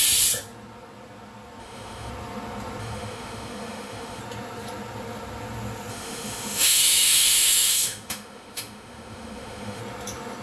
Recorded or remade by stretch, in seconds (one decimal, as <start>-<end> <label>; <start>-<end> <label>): 0.0-1.6 recorded; 1.6-2.1 remade; 2.1-2.8 recorded; 2.8-4.2 remade; 4.2-5.9 recorded; 5.9-9.8 remade; 9.8-10.4 recorded